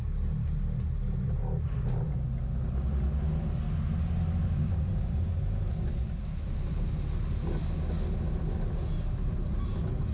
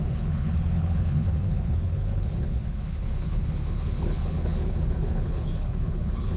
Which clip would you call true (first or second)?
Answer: first